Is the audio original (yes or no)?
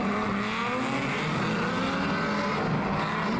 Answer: yes